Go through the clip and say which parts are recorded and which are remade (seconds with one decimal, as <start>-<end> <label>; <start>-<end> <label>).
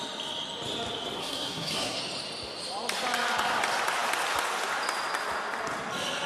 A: 0.0-1.2 recorded; 1.2-2.0 remade; 2.0-6.3 recorded